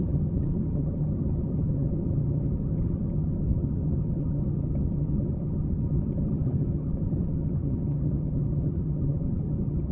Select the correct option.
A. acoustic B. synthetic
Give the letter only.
B